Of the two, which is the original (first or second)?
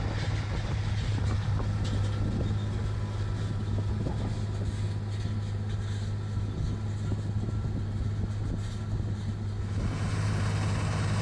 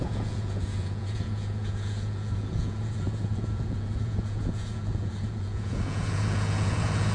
first